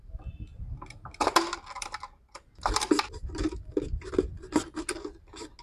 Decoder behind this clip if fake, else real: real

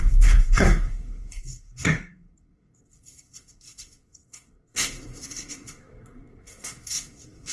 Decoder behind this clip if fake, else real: fake, codec, SNAC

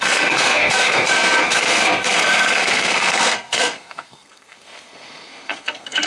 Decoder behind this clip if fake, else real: fake, codec, SNAC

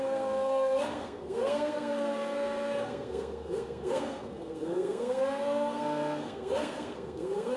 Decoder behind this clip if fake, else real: fake, codec, SNAC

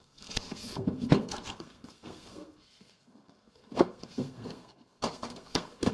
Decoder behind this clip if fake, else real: fake, codec, SNAC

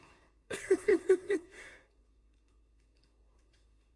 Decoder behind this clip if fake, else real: fake, codec, SNAC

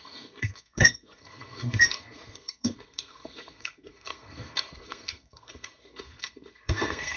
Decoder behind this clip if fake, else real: fake, codec, SNAC